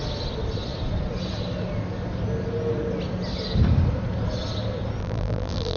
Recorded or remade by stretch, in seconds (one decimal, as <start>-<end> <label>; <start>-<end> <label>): 0.0-5.0 recorded; 5.0-5.8 remade